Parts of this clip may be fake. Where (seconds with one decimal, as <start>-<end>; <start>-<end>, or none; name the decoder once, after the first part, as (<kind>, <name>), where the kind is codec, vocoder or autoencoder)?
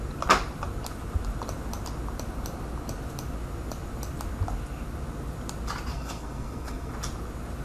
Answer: 5.9-6.9 (codec, SNAC)